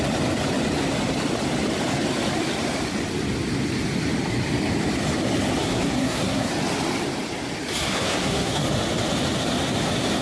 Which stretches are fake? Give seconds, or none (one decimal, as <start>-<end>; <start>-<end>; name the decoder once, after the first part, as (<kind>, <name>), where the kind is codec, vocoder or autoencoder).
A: 5.6-6.5 (codec, SNAC); 7.9-8.6